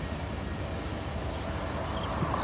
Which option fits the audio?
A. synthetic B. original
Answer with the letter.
B